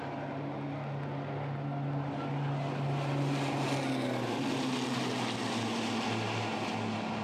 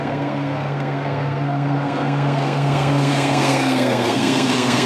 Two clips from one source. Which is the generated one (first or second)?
second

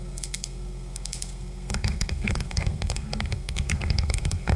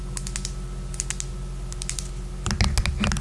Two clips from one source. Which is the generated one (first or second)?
first